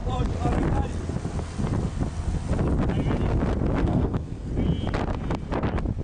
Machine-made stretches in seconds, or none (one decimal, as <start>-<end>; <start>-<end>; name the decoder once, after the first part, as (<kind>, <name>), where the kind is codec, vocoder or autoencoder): 3.8-4.5 (codec, SNAC)